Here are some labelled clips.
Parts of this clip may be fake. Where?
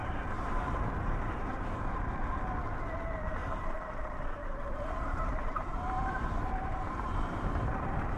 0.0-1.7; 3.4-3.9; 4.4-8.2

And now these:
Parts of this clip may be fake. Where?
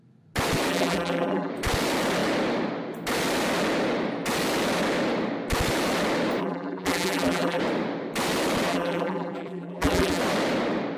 0.7-1.5; 6.4-7.6; 8.7-10.2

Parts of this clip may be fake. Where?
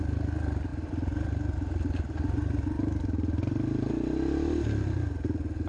0.7-3.9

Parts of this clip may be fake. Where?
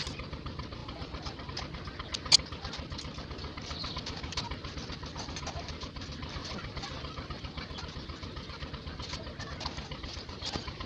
0.8-1.4; 6.4-8.7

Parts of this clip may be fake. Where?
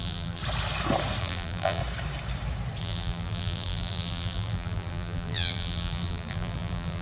0.0-0.4; 1.2-1.8; 2.8-7.0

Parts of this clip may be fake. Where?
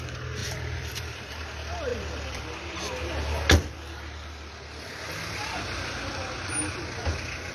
0.4-1.3; 1.9-2.4